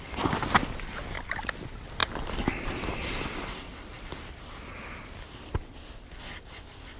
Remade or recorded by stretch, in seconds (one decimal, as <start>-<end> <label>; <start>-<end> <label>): 0.0-7.0 recorded